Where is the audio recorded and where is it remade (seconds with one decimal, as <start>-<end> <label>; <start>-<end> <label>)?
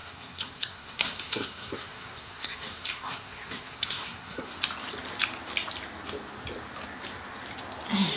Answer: 0.0-4.6 remade; 4.6-8.2 recorded